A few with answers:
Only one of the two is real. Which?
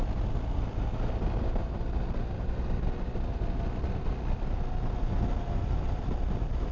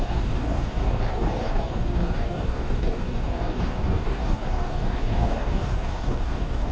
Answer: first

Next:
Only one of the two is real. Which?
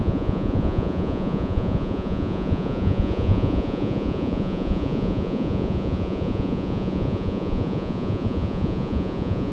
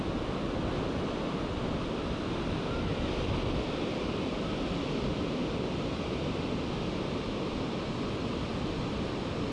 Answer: second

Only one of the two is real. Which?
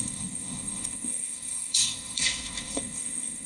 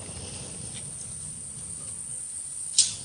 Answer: second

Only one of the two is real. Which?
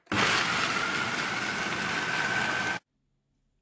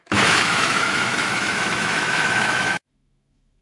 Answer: first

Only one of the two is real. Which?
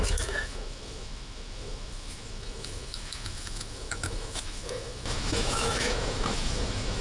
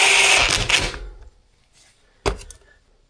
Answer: second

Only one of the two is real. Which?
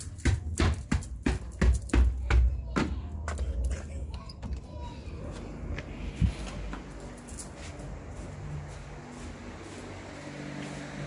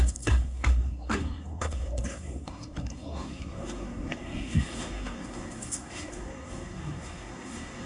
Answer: first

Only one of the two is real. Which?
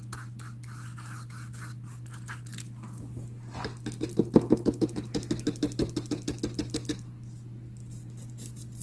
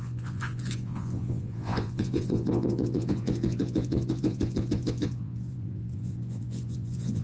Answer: first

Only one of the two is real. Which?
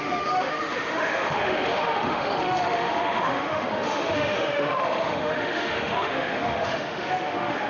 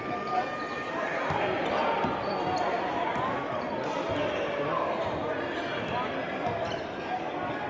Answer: second